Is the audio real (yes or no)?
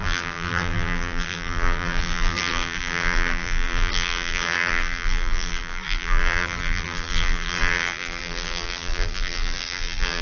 no